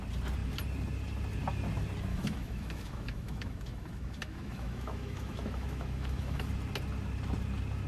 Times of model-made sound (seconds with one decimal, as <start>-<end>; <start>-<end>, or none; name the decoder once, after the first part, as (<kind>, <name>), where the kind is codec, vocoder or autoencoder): 2.1-6.5 (autoencoder, DAC-VAE)

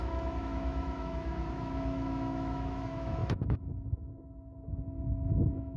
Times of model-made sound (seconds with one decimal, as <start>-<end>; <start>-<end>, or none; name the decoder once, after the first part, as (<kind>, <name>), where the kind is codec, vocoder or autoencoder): 0.0-5.8 (autoencoder, DAC-VAE)

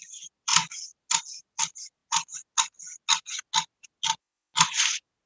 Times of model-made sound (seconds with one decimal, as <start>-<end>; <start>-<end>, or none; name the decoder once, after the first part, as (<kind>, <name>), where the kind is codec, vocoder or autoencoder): none

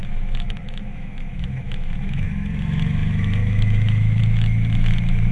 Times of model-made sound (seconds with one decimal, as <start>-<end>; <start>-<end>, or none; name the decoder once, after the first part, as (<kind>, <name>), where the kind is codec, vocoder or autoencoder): 0.0-5.3 (autoencoder, DAC-VAE)

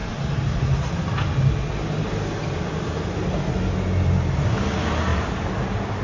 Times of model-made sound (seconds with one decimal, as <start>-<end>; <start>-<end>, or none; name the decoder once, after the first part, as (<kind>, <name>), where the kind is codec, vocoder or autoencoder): none

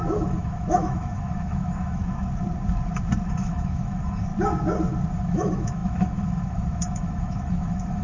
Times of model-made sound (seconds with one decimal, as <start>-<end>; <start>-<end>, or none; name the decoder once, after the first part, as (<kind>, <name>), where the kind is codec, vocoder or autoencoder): 0.0-2.0 (autoencoder, DAC-VAE); 3.3-4.3; 5.1-8.0

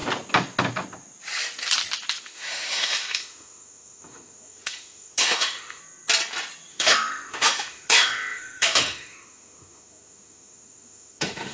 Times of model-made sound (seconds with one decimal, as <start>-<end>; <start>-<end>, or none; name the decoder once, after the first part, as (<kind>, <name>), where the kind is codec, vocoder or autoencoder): 2.2-5.8 (autoencoder, DAC-VAE); 6.7-11.5

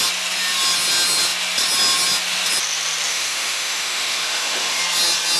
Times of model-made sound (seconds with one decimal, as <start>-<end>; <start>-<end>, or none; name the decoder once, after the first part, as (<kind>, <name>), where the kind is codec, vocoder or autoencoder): 3.1-4.8 (autoencoder, DAC-VAE)